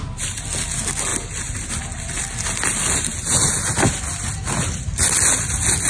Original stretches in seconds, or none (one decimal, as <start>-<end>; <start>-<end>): 0.0-5.9